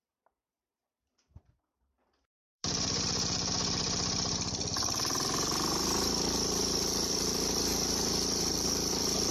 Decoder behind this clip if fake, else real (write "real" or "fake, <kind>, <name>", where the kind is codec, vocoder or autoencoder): fake, vocoder, BigVGAN v2